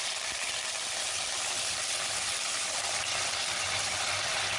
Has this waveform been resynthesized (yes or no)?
no